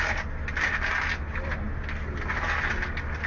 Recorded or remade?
recorded